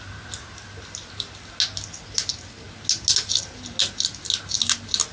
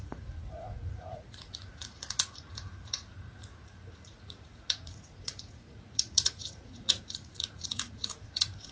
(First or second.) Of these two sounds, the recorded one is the first